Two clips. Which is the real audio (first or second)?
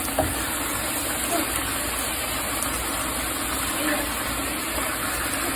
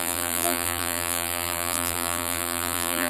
first